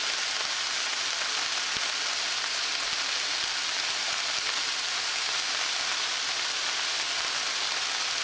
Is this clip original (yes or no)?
yes